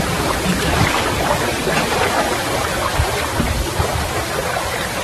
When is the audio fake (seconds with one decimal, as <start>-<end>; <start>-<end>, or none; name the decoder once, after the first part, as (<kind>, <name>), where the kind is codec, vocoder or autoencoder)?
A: 1.5-2.0 (vocoder, BigVGAN v2)